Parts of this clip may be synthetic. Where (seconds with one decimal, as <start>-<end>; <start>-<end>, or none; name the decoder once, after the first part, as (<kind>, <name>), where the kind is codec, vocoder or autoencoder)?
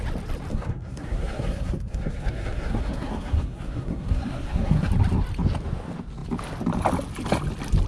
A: 0.5-4.9 (codec, SNAC)